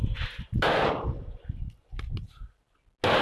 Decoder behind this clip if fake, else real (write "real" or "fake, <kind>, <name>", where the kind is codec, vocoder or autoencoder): real